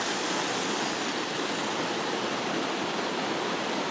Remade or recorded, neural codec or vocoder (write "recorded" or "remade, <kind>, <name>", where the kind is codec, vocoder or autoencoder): recorded